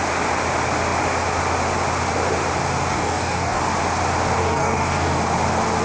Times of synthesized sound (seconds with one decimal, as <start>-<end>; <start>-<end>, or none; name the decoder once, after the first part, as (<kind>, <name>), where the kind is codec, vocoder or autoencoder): 2.9-3.6 (codec, DAC); 4.4-5.2